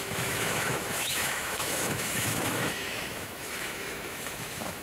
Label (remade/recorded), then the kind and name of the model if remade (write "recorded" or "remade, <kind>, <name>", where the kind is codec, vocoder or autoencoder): remade, autoencoder, DAC-VAE